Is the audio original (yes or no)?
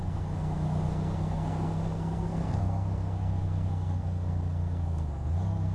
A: no